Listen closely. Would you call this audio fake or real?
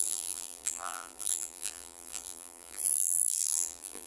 fake